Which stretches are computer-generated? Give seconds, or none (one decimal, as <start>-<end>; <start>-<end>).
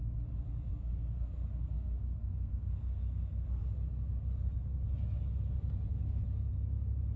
0.7-3.6